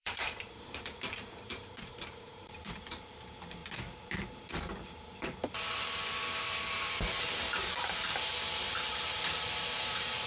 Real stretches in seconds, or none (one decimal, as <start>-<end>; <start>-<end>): 3.6-7.2